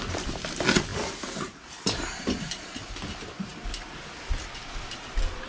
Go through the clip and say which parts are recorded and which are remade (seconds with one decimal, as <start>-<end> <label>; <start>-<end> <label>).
0.0-5.5 recorded